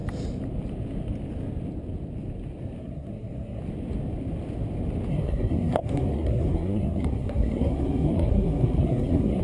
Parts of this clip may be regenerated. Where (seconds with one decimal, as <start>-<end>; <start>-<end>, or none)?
2.8-3.6; 5.1-9.4